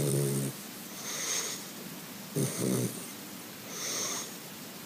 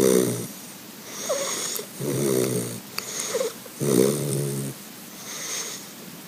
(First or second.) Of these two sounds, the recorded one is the first